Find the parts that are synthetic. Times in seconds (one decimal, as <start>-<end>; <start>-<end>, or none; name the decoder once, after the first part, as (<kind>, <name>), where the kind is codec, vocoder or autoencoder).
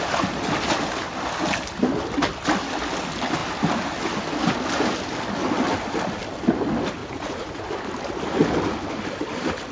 7.0-7.6 (vocoder, Vocos)